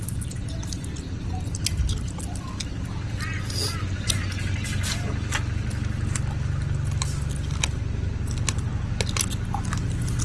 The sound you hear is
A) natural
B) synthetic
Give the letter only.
A